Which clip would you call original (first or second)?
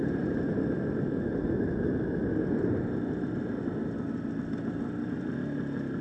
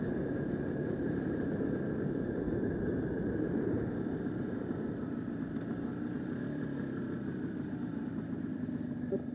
first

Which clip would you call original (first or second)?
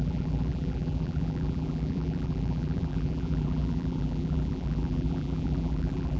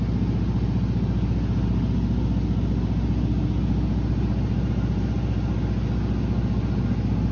second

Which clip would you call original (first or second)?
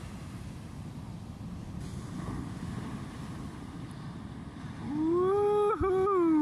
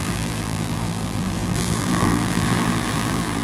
first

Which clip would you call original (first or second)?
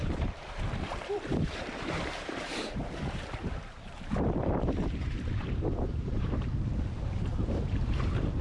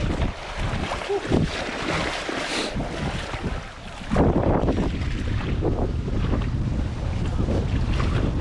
second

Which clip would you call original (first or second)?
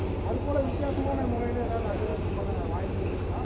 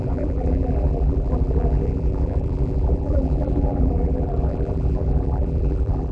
first